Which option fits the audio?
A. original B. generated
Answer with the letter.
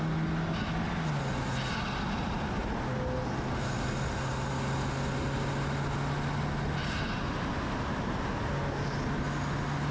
A